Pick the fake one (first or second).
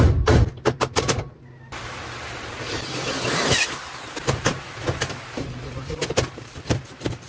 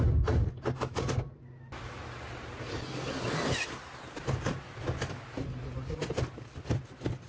first